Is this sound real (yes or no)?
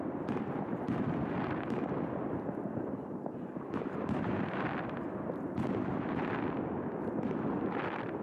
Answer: no